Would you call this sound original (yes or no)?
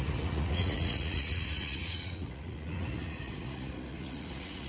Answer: no